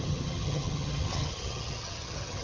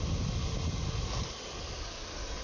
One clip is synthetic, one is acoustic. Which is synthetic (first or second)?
first